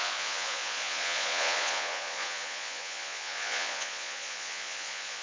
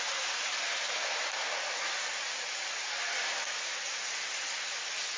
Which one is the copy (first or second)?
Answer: first